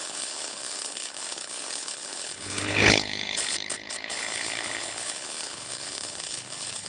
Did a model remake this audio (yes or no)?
yes